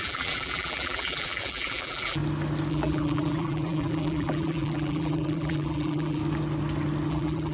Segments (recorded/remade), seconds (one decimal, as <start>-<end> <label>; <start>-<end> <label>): 0.0-2.2 remade; 2.2-2.7 recorded; 2.7-6.2 remade; 6.2-7.1 recorded; 7.1-7.5 remade